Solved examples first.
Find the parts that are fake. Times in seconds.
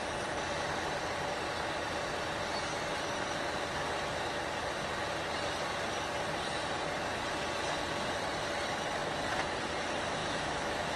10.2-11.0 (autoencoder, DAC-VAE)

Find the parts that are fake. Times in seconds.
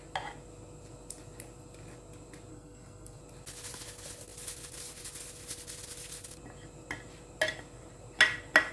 2.5-3.2 (codec, SNAC)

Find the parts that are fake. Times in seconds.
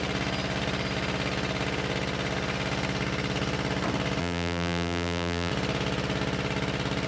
4.2-5.5 (vocoder, BigVGAN v2)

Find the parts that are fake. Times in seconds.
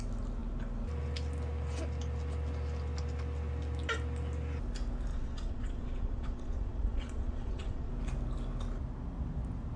5.1-7.9 (vocoder, Vocos)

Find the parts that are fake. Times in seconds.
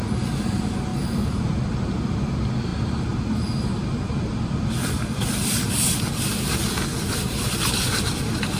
2.7-6.1 (vocoder, BigVGAN v2); 6.9-8.0